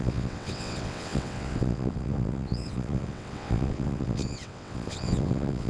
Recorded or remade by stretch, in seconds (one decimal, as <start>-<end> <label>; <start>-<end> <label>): 0.0-5.7 remade